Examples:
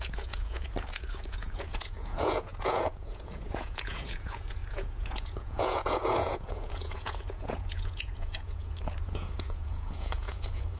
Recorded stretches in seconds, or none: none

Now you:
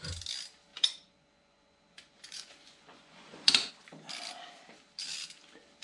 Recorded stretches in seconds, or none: 0.0-0.7; 3.7-5.8

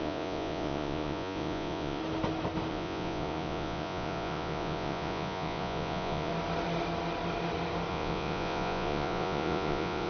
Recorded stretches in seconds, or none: 2.0-2.7; 6.3-7.9